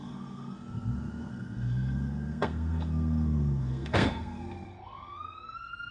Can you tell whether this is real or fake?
fake